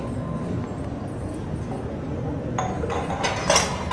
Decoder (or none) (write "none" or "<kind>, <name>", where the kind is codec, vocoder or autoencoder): none